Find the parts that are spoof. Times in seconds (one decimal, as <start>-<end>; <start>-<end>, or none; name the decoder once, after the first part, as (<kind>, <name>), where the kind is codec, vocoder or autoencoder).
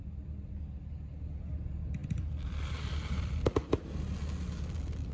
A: 2.0-3.8 (vocoder, BigVGAN v2)